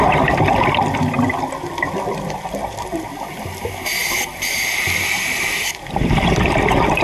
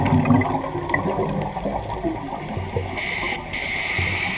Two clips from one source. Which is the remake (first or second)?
first